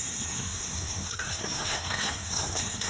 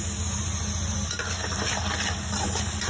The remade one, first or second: first